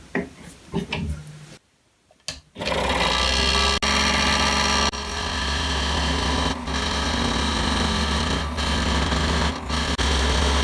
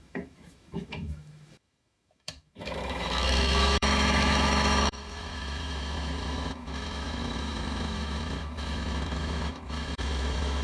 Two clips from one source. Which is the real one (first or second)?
first